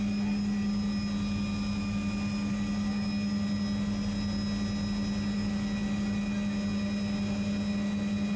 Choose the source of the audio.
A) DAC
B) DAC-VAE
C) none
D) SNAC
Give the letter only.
C